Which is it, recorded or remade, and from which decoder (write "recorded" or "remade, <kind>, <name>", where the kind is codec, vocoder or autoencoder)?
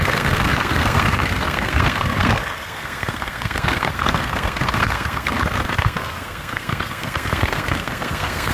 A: remade, codec, SNAC